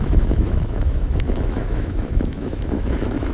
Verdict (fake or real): fake